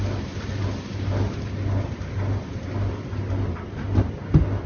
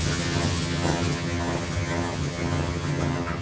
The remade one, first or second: second